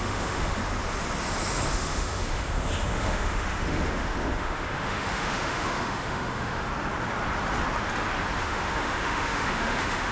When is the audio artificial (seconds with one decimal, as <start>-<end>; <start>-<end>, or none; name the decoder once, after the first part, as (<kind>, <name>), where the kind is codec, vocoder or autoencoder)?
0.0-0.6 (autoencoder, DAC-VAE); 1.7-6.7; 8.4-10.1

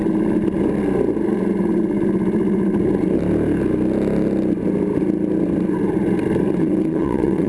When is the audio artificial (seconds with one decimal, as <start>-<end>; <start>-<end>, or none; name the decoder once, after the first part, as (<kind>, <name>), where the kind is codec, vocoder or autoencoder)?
6.6-7.5 (vocoder, WaveNeXt)

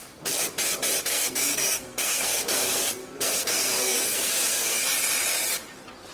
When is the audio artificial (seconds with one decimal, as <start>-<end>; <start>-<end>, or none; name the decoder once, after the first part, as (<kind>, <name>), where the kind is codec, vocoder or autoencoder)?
0.0-0.5 (codec, SNAC); 1.1-4.8

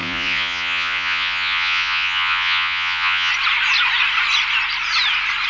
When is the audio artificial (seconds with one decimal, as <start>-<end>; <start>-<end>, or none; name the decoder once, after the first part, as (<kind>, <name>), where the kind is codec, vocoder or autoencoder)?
0.0-3.3 (vocoder, Vocos)